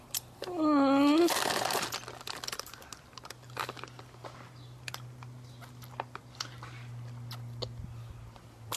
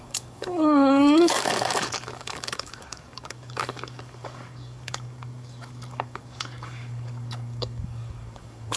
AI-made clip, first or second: second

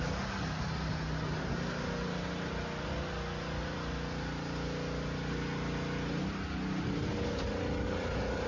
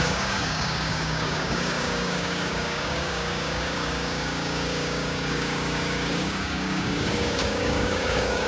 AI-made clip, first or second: second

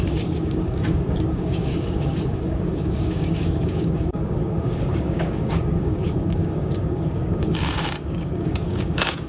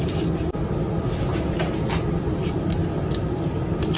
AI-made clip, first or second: first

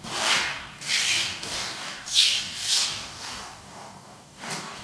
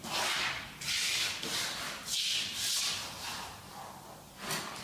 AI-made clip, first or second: first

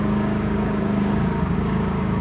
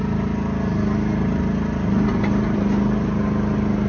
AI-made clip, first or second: first